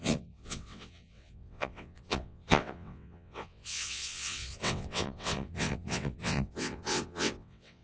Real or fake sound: fake